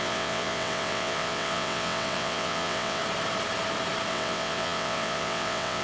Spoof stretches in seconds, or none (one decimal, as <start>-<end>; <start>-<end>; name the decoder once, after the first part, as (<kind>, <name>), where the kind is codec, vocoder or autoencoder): 0.0-3.0 (vocoder, WaveNeXt); 4.1-5.8